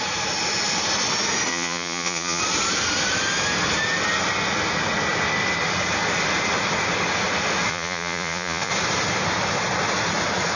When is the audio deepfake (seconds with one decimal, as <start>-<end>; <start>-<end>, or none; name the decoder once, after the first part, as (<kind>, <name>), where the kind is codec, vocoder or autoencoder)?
1.5-2.4 (vocoder, Vocos); 7.7-8.7